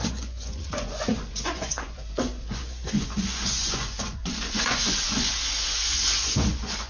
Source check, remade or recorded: remade